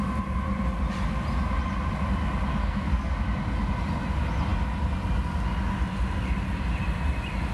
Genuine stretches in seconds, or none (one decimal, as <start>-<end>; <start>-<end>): 0.0-2.5; 3.1-7.5